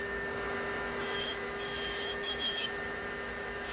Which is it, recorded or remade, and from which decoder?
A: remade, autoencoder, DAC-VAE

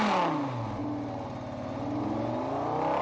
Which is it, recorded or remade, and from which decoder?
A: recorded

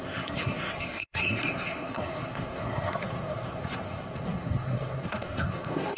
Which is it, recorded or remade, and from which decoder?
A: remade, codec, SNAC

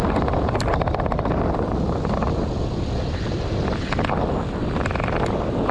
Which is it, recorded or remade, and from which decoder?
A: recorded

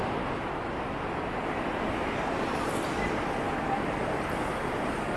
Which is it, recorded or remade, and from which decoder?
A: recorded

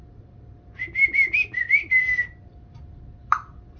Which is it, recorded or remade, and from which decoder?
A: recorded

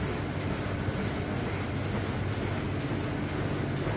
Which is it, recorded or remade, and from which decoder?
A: recorded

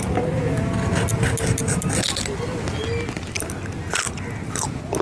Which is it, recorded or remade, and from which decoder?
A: recorded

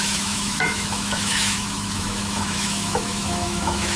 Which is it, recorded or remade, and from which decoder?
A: remade, autoencoder, DAC-VAE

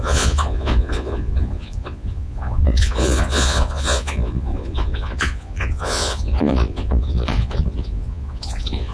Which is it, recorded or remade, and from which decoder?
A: remade, vocoder, Vocos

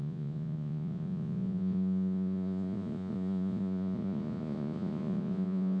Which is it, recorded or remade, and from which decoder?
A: remade, vocoder, Vocos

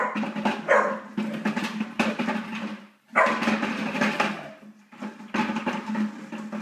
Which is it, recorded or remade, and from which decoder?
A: recorded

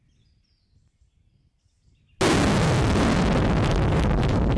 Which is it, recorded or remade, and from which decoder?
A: recorded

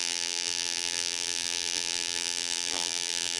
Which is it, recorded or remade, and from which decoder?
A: remade, vocoder, BigVGAN v2